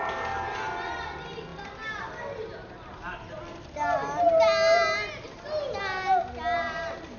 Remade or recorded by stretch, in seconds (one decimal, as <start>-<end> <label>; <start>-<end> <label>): 0.0-7.2 recorded

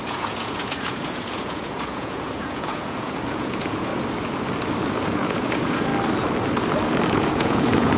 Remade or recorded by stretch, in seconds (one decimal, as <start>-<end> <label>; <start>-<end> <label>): 0.0-3.9 remade; 3.9-4.9 recorded; 4.9-5.9 remade; 5.9-7.1 recorded; 7.1-8.0 remade

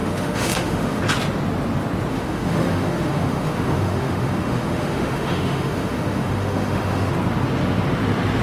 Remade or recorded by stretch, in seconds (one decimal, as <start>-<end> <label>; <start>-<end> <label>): 0.0-1.0 remade; 1.0-2.1 recorded; 2.1-7.1 remade; 7.1-8.4 recorded

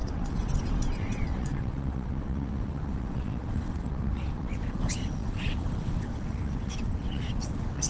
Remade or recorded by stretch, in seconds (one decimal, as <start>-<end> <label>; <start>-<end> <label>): 0.0-7.9 remade

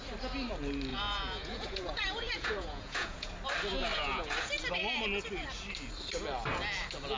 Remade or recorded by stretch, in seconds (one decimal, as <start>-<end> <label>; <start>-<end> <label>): 0.0-0.9 recorded; 0.9-3.3 remade; 3.3-3.9 recorded; 3.9-4.6 remade; 4.6-7.2 recorded

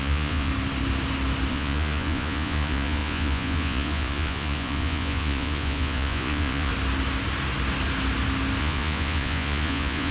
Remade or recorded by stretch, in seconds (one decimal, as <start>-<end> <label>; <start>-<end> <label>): 0.0-0.5 remade; 0.5-1.5 recorded; 1.5-6.7 remade; 6.7-8.6 recorded; 8.6-10.1 remade